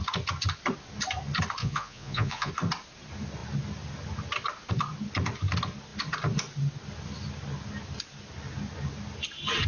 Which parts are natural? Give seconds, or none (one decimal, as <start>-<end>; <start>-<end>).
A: 0.0-1.6; 2.5-9.7